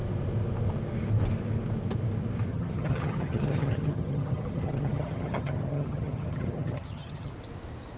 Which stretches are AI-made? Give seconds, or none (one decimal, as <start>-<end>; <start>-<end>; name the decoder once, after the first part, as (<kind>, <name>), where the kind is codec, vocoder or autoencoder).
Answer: 2.5-7.3 (vocoder, HiFi-GAN)